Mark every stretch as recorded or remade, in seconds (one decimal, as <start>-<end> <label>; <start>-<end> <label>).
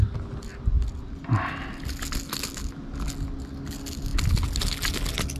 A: 0.0-5.4 recorded